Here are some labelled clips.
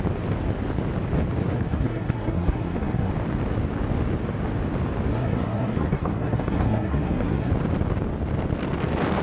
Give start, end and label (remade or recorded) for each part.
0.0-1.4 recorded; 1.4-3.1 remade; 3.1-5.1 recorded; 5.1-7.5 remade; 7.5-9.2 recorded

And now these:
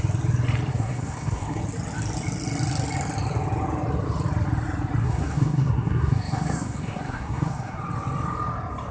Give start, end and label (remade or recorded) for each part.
0.0-0.7 recorded; 0.7-1.6 remade; 1.6-5.0 recorded; 5.0-7.8 remade; 7.8-8.9 recorded

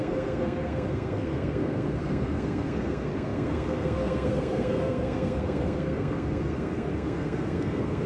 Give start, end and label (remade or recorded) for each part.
0.0-8.1 remade